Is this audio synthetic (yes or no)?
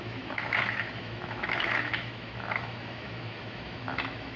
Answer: yes